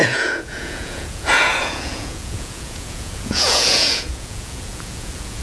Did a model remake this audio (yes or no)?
yes